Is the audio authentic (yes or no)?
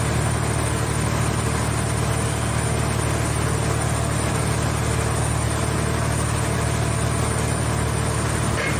yes